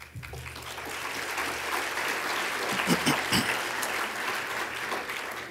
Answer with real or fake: real